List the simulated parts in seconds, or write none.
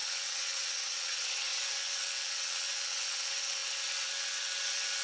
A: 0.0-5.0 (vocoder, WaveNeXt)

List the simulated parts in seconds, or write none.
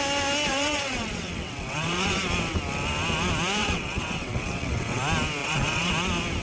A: 0.5-2.2 (vocoder, WaveNeXt); 3.6-5.0; 5.4-5.9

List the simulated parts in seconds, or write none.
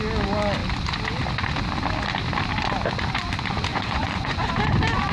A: 3.7-4.5 (vocoder, Vocos)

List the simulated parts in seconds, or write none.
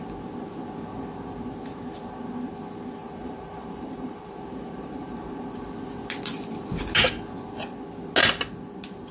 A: 3.0-5.4 (vocoder, BigVGAN v2)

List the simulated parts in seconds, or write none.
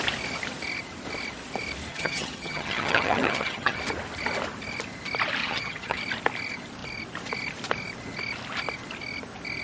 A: 1.9-3.8 (vocoder, HiFi-GAN); 5.4-6.0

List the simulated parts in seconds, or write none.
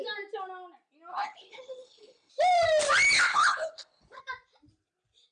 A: 1.1-2.3 (codec, HILCodec); 3.3-4.2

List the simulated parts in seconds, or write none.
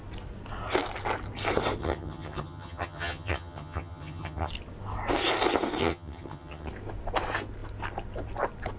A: 1.8-4.5 (vocoder, HiFi-GAN); 5.8-6.7